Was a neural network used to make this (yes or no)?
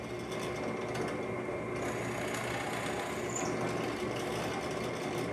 no